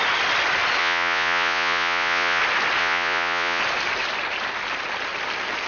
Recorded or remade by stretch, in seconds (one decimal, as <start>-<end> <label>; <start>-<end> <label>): 0.0-0.8 recorded; 0.8-2.4 remade; 2.4-2.8 recorded; 2.8-3.6 remade; 3.6-5.7 recorded